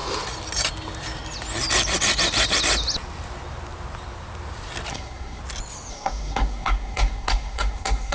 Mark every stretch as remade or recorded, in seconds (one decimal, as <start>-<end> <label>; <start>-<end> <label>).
0.0-4.9 recorded; 4.9-5.4 remade; 5.4-5.9 recorded; 5.9-8.1 remade